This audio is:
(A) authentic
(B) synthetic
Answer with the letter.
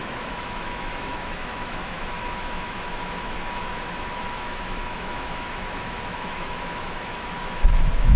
B